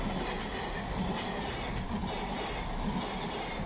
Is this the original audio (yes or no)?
yes